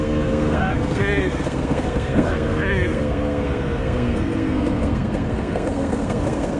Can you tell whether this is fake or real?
fake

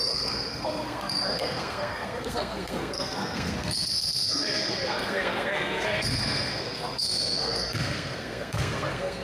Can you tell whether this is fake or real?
fake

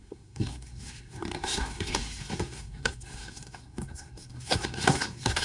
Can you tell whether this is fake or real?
fake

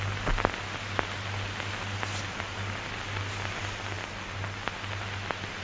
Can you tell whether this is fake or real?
real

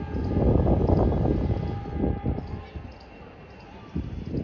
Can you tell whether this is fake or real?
real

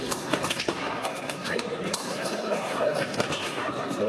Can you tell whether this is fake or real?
fake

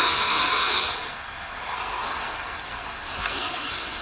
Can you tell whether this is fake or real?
fake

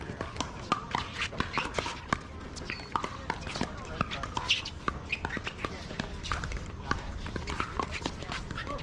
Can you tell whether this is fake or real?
real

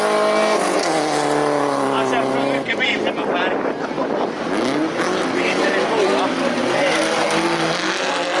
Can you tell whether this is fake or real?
real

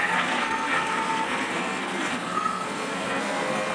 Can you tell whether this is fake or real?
fake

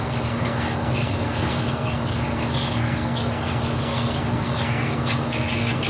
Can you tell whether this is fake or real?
fake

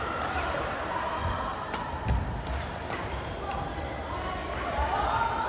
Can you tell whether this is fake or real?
real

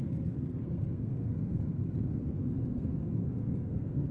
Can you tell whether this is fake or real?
fake